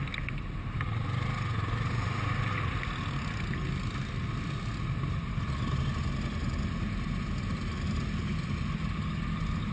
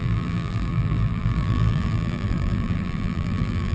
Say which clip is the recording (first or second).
first